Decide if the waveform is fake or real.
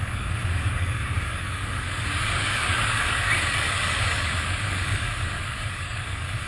fake